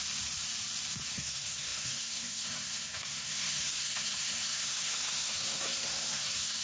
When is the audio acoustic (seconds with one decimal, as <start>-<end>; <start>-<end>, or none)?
0.0-1.1